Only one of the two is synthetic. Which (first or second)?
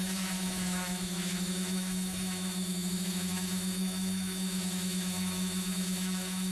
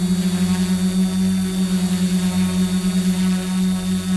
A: first